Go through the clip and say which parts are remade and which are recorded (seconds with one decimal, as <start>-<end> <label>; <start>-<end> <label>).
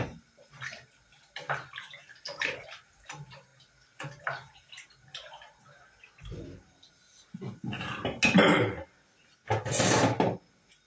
0.0-10.9 recorded